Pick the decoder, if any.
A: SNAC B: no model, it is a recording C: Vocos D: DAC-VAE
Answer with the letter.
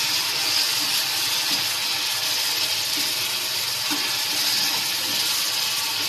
B